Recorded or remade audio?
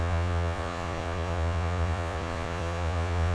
remade